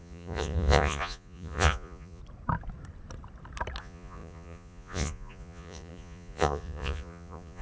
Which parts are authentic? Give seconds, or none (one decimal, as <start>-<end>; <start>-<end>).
2.2-3.8